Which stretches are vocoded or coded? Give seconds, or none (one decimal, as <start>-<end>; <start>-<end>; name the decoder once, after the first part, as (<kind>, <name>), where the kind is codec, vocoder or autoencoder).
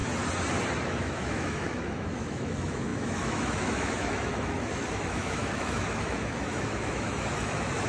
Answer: 0.8-7.9 (autoencoder, DAC-VAE)